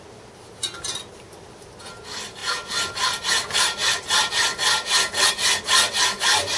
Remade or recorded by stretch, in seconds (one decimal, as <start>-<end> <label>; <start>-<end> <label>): 0.0-6.6 recorded